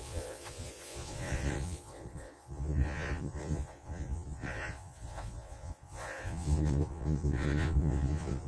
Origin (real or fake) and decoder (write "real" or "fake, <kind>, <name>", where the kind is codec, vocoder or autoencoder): fake, vocoder, Vocos